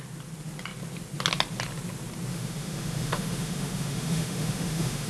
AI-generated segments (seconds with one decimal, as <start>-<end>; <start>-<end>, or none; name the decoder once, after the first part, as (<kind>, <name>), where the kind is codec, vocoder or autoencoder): 2.3-5.1 (autoencoder, DAC-VAE)